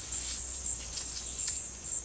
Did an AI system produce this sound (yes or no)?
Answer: yes